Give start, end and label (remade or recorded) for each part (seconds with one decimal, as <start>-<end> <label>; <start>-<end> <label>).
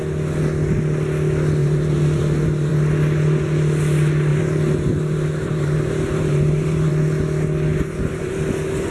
0.0-1.6 recorded; 1.6-2.7 remade; 2.7-4.3 recorded; 4.3-6.9 remade; 6.9-7.7 recorded; 7.7-8.3 remade; 8.3-8.9 recorded